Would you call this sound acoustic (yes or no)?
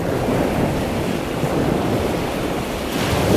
yes